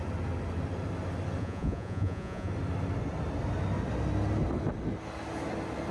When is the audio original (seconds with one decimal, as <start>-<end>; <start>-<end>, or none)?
0.0-1.4; 2.5-5.9